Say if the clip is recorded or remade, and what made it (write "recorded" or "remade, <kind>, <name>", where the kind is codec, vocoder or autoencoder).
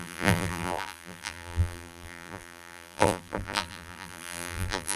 remade, vocoder, BigVGAN v2